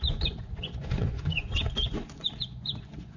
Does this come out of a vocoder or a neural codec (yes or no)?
yes